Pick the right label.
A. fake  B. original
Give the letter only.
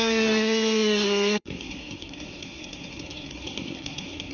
A